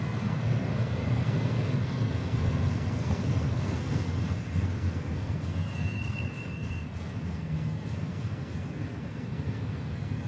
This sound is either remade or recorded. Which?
remade